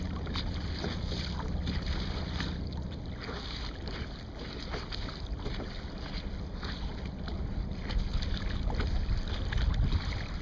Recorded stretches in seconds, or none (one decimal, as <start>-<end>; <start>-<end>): 0.0-10.4